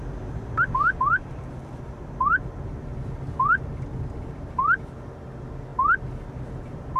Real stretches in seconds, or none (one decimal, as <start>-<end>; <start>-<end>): 0.0-7.0